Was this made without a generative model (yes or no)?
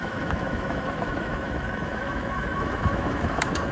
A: no